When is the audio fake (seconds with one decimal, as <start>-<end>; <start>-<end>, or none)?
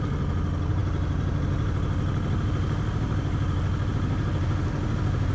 none